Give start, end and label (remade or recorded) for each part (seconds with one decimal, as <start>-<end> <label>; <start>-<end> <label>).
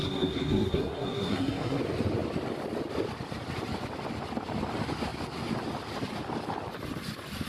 0.0-1.8 remade; 1.8-7.5 recorded